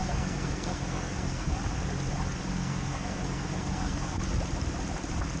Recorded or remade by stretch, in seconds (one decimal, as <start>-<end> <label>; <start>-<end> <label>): 0.0-1.6 remade; 1.6-2.6 recorded; 2.6-4.2 remade; 4.2-5.4 recorded